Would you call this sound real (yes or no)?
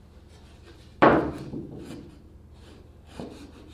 yes